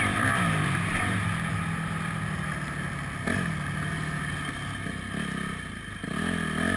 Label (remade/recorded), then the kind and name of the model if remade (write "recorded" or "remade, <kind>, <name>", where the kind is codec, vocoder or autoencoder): recorded